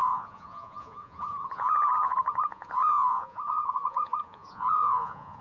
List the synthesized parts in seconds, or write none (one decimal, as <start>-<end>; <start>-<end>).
0.0-5.4